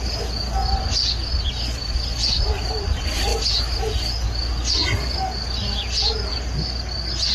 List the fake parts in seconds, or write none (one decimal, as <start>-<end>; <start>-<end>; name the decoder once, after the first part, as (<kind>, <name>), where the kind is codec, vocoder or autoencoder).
none